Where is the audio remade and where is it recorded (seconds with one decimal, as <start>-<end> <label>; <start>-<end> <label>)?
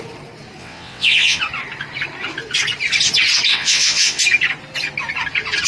0.0-0.6 recorded; 0.6-1.4 remade; 1.4-3.5 recorded; 3.5-4.2 remade; 4.2-5.7 recorded